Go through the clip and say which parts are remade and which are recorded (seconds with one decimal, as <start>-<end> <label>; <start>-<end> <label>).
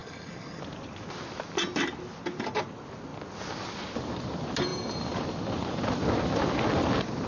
0.0-0.6 remade; 0.6-7.3 recorded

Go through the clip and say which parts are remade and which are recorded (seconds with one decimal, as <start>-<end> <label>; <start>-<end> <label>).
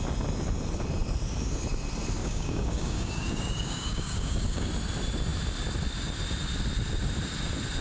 0.0-2.2 recorded; 2.2-4.7 remade; 4.7-7.8 recorded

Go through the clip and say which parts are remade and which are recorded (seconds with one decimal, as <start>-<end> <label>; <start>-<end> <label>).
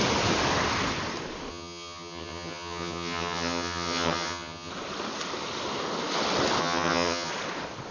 0.0-1.5 recorded; 1.5-4.7 remade; 4.7-6.6 recorded; 6.6-7.3 remade; 7.3-7.9 recorded